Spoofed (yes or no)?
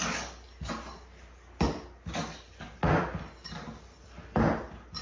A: no